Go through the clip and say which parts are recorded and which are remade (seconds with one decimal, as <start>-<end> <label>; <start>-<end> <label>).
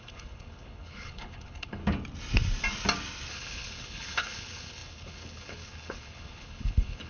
0.0-1.8 remade; 1.8-3.3 recorded; 3.3-7.1 remade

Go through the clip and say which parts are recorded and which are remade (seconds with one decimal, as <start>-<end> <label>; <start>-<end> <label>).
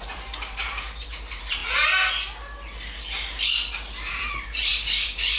0.0-1.6 remade; 1.6-3.9 recorded; 3.9-5.4 remade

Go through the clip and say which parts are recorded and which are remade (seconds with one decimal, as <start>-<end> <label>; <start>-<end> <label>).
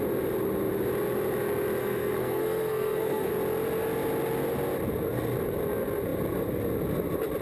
0.0-1.8 recorded; 1.8-3.3 remade; 3.3-7.4 recorded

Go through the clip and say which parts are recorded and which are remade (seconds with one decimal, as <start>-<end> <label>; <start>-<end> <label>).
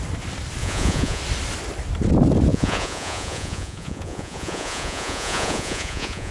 0.0-0.6 recorded; 0.6-1.2 remade; 1.2-2.5 recorded; 2.5-6.3 remade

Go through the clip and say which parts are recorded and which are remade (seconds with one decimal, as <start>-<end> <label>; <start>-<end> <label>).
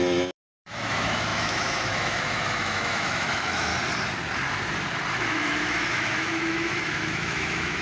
0.0-3.7 remade; 3.7-5.1 recorded; 5.1-7.8 remade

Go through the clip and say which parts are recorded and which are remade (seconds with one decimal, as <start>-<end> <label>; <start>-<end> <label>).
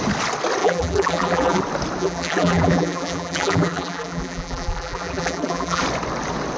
0.0-0.6 recorded; 0.6-1.6 remade; 1.6-2.0 recorded; 2.0-5.8 remade; 5.8-6.6 recorded